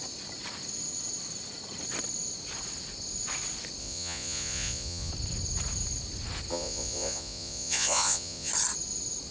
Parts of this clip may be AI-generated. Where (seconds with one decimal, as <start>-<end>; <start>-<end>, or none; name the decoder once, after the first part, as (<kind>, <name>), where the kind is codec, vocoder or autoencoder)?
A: 3.8-5.1 (vocoder, Vocos); 6.5-8.5